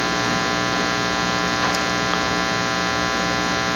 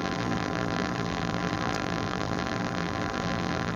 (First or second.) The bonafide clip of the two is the first